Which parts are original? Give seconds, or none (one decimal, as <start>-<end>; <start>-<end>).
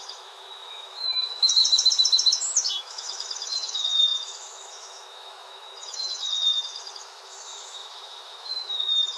1.6-2.5